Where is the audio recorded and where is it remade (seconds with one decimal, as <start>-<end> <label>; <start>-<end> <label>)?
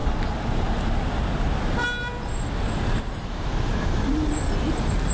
0.0-3.1 recorded; 3.1-4.1 remade; 4.1-5.1 recorded